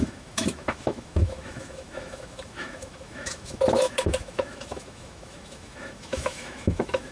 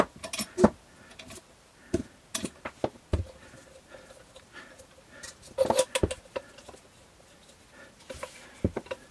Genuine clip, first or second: second